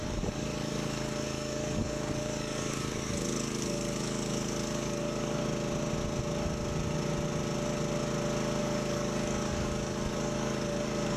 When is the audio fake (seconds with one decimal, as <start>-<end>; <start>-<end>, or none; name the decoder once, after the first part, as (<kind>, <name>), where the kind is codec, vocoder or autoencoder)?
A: 0.0-5.4 (codec, DAC); 8.6-11.2